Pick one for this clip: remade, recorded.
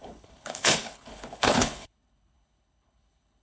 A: remade